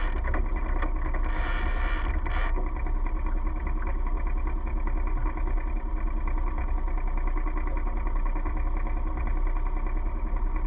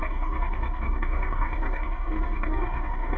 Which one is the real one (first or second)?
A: first